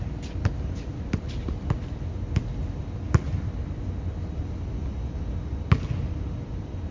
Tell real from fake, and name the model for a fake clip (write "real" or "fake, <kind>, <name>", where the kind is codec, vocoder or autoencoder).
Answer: real